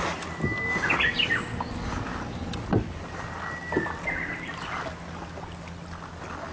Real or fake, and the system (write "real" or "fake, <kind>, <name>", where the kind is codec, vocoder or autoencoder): real